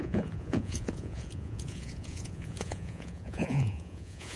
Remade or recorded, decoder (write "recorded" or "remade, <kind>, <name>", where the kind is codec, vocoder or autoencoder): remade, vocoder, Vocos